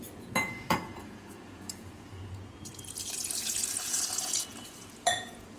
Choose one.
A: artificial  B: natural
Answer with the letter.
A